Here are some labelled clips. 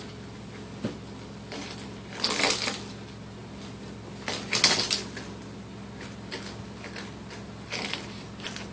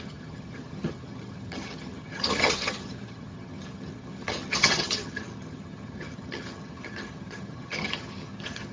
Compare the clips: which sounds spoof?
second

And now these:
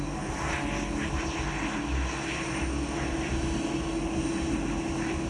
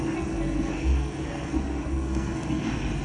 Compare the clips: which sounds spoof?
second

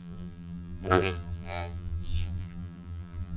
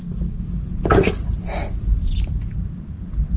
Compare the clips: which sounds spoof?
first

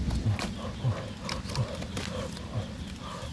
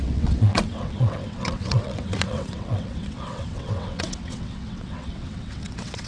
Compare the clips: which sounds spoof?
second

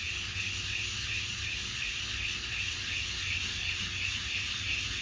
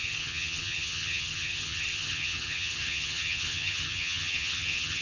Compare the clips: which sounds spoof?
second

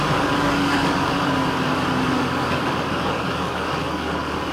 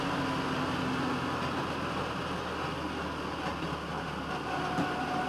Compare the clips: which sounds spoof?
first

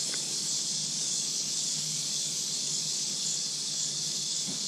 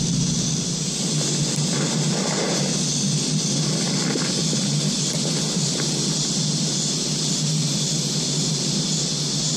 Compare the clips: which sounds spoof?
first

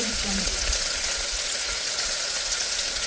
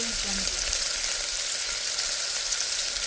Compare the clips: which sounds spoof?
first